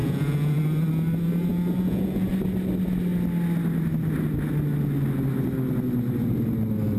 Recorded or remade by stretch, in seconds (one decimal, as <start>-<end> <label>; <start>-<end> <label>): 0.0-0.6 remade; 0.6-1.5 recorded; 1.5-2.3 remade; 2.3-7.0 recorded